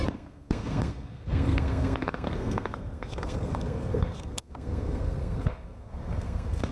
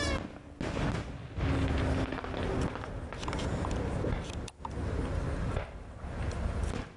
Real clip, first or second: second